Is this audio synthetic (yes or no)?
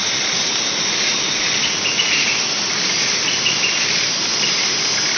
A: no